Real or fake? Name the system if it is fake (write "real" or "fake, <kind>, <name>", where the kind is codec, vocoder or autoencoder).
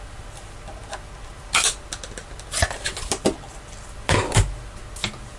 real